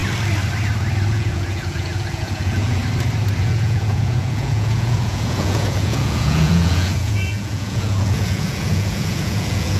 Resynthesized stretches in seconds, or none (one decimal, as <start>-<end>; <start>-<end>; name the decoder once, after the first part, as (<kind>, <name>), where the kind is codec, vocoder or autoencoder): 1.1-2.8 (vocoder, Vocos); 3.4-9.8

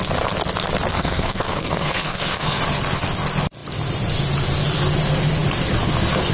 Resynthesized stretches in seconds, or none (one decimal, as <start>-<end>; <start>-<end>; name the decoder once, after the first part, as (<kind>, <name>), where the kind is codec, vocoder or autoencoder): 0.9-2.6 (codec, SNAC)

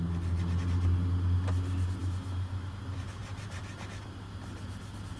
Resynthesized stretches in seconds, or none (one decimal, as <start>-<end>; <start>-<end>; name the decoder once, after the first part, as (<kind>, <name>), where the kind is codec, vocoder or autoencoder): 2.0-2.8 (autoencoder, DAC-VAE)

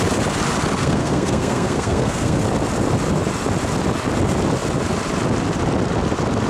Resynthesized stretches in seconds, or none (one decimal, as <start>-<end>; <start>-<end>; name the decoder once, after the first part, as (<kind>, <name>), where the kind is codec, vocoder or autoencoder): 0.8-2.4 (codec, SNAC)

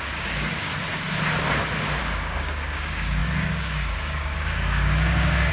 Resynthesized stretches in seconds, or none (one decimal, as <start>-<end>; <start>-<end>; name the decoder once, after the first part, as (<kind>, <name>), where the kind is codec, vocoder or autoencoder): 0.0-0.7 (codec, DAC); 2.0-5.5

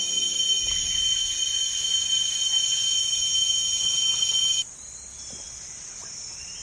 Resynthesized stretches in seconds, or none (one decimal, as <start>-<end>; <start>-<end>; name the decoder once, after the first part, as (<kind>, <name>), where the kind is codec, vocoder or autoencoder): 3.0-3.9 (vocoder, BigVGAN v2); 6.0-6.6

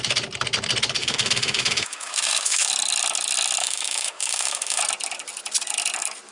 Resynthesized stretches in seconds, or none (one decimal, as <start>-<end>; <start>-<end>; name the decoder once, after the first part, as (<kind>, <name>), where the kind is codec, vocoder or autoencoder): 1.0-2.7 (autoencoder, DAC-VAE); 3.6-4.8

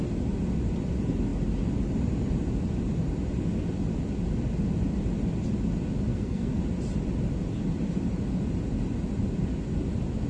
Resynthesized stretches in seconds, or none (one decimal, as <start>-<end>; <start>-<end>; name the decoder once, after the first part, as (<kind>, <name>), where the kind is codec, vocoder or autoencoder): 6.1-6.6 (codec, SNAC)